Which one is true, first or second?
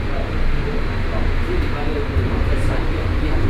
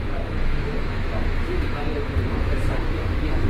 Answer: first